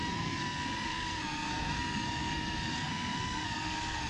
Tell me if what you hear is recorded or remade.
remade